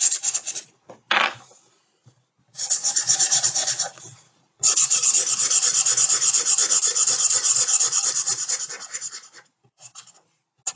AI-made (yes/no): no